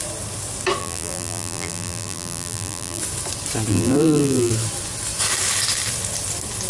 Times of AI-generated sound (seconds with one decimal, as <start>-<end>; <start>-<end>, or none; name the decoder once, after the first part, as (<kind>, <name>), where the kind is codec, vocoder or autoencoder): 0.8-3.0 (vocoder, BigVGAN v2); 3.7-4.5